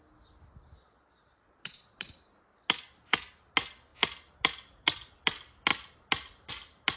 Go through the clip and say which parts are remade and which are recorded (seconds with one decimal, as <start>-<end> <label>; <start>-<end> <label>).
0.0-0.8 recorded; 0.8-2.1 remade; 2.1-7.0 recorded